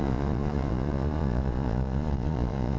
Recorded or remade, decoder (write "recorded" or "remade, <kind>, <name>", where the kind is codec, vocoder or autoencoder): remade, vocoder, Vocos